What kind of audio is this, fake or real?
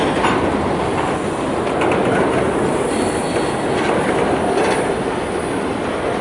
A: real